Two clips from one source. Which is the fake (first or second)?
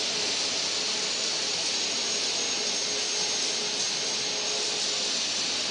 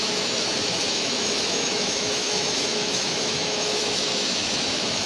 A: second